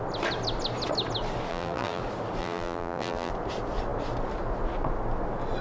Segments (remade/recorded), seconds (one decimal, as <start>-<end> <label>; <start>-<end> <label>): 0.0-1.5 recorded; 1.5-2.0 remade; 2.0-2.4 recorded; 2.4-3.3 remade; 3.3-5.6 recorded